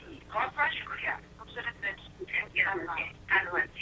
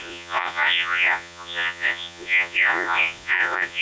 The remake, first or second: second